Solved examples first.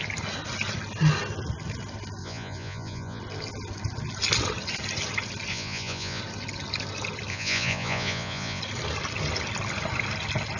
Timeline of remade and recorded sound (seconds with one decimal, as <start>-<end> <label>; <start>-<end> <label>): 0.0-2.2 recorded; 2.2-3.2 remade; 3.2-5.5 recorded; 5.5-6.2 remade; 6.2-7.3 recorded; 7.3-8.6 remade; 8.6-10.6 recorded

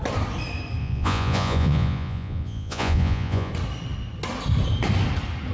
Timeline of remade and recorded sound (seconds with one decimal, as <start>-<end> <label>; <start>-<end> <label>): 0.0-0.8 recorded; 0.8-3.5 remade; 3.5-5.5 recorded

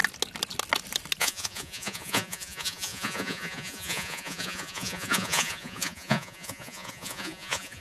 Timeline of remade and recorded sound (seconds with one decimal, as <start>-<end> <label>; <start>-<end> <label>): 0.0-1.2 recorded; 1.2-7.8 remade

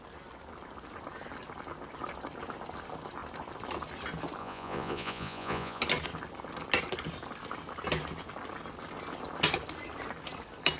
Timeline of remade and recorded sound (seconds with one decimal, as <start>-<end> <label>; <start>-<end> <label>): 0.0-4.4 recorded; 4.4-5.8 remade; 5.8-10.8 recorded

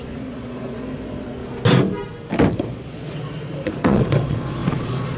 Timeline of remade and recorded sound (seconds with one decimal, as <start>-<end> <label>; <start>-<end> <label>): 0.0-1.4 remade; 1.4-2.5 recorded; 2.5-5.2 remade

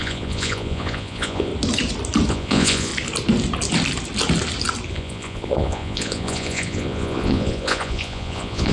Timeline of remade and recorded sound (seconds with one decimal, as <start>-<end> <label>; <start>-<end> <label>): 0.0-1.5 remade; 1.5-2.3 recorded; 2.3-2.9 remade; 2.9-4.9 recorded; 4.9-8.7 remade

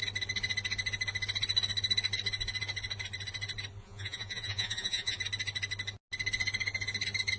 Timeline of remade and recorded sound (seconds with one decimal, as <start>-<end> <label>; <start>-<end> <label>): 0.0-3.8 recorded; 3.8-5.2 remade; 5.2-7.4 recorded